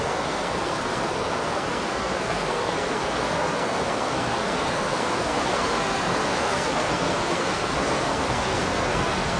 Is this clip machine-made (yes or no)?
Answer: yes